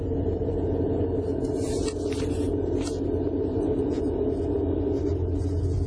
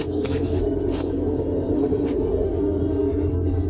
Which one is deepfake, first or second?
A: second